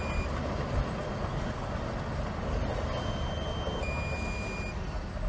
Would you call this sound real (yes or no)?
yes